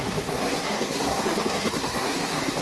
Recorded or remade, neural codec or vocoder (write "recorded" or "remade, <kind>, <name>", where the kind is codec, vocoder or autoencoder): remade, codec, SNAC